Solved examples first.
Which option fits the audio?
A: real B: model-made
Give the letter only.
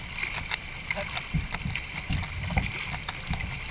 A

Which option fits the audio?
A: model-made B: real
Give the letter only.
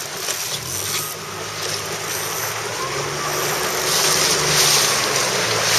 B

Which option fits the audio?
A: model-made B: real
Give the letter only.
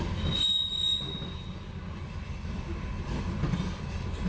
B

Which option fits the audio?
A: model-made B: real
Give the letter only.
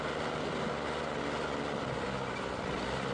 B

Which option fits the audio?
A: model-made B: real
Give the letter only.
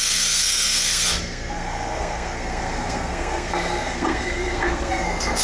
A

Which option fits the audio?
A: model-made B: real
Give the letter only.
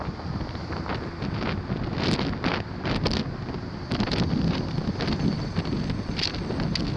B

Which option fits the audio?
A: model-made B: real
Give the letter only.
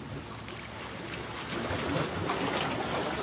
B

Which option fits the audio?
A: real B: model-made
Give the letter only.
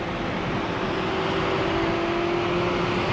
A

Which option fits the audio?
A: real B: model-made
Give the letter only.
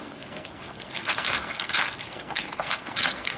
B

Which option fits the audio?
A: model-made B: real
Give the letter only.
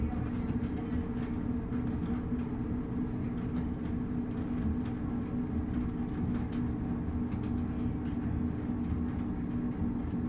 B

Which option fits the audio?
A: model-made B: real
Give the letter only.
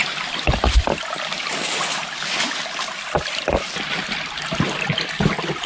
B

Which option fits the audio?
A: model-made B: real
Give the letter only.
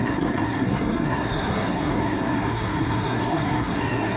A